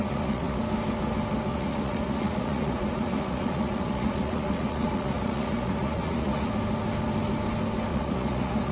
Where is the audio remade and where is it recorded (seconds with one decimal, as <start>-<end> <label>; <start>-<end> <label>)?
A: 0.0-0.6 remade; 0.6-1.5 recorded; 1.5-6.5 remade; 6.5-7.9 recorded; 7.9-8.7 remade